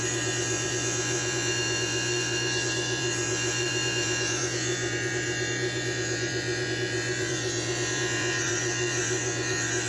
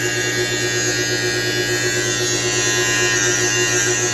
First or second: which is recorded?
second